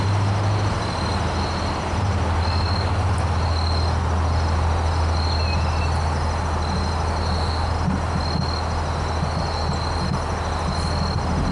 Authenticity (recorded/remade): recorded